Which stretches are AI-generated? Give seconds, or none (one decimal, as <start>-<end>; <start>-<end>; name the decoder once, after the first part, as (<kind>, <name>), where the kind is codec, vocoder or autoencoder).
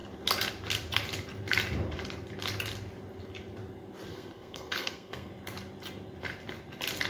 4.1-5.3 (codec, SNAC)